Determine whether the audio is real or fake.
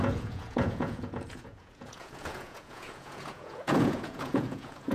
fake